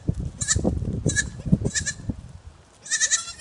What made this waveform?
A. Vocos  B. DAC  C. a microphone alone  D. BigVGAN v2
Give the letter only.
C